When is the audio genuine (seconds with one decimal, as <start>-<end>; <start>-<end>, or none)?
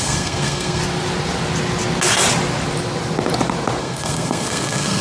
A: 0.8-3.8